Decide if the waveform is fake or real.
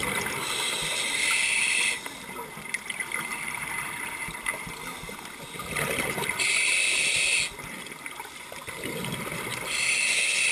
real